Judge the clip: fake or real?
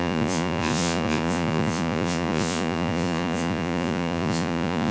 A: fake